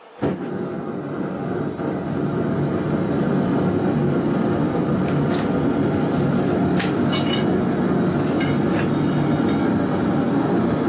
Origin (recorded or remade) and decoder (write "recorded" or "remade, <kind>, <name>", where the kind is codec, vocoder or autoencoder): recorded